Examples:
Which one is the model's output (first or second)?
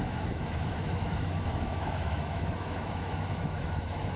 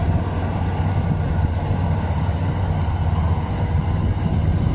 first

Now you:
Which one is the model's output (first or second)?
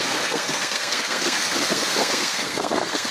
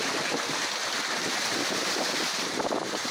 first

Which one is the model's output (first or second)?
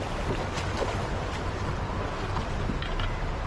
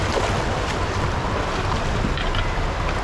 second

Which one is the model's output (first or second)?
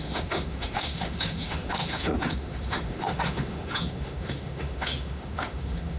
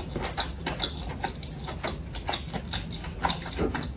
first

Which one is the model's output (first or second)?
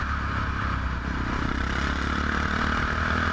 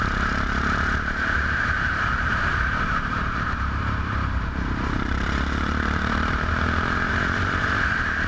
second